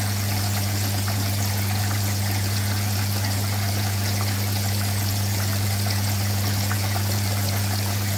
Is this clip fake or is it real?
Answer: fake